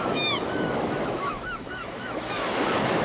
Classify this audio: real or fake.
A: fake